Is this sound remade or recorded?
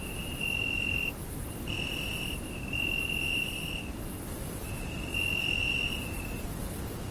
recorded